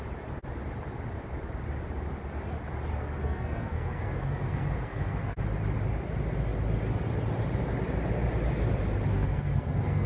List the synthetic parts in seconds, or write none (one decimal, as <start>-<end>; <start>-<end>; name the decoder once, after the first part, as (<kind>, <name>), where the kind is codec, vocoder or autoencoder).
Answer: 2.9-5.4 (codec, SNAC); 9.1-10.1